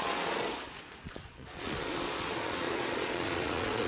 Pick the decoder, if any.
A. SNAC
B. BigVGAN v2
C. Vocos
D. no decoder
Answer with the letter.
C